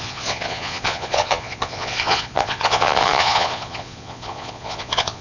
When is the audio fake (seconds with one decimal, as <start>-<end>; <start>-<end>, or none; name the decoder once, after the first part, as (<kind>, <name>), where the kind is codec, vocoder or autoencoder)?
0.0-5.2 (vocoder, Vocos)

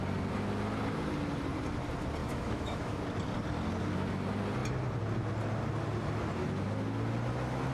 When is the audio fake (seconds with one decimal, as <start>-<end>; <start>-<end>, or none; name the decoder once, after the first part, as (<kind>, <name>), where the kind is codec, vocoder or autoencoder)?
2.2-3.0 (autoencoder, DAC-VAE)

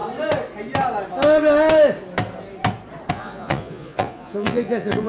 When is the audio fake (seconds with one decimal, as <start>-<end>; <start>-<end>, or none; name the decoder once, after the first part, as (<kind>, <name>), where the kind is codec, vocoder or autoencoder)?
3.1-5.1 (vocoder, Vocos)

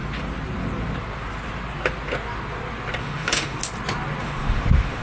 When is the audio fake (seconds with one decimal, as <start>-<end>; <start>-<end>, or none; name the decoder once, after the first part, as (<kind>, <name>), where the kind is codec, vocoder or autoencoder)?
3.0-3.6 (autoencoder, DAC-VAE); 4.2-5.0

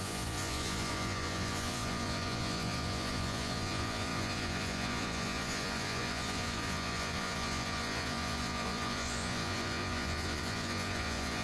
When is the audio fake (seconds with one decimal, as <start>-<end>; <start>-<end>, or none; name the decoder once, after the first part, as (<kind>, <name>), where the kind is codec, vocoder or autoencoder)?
0.0-11.4 (vocoder, Vocos)